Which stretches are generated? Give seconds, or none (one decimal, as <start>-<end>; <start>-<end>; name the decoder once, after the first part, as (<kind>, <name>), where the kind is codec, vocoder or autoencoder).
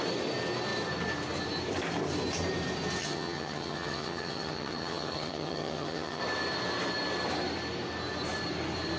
3.0-6.2 (vocoder, HiFi-GAN)